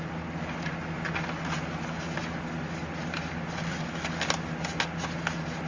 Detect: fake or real real